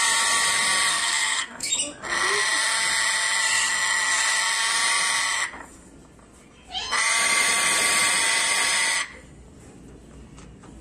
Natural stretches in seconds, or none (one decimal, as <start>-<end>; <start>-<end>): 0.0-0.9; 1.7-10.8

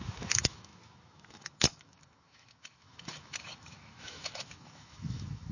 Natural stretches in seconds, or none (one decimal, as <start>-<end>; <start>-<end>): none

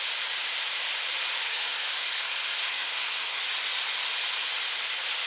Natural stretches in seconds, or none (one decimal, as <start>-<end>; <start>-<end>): 0.0-1.4; 3.4-5.3

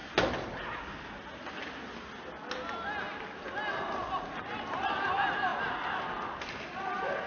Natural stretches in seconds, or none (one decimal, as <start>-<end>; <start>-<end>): 0.0-7.3